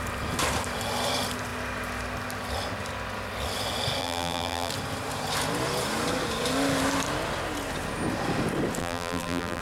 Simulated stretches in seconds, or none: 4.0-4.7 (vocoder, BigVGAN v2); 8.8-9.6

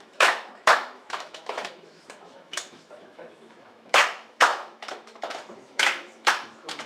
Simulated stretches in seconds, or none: 0.0-6.9 (autoencoder, DAC-VAE)

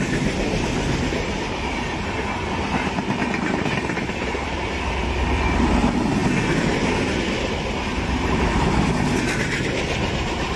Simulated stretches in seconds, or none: none

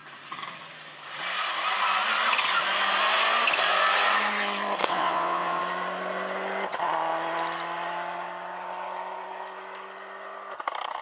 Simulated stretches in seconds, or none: 4.8-5.6 (vocoder, WaveNeXt)